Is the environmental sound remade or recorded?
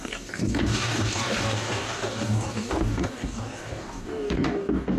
remade